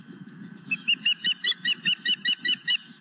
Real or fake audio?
fake